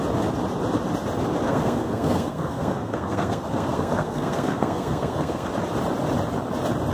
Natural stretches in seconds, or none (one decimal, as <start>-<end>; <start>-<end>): 0.0-1.4; 5.5-6.9